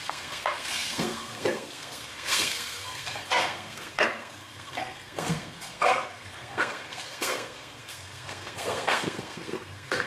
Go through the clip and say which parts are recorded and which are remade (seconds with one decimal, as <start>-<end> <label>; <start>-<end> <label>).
0.0-10.1 remade